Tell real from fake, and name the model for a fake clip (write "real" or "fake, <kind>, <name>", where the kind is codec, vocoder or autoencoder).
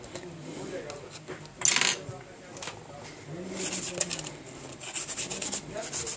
real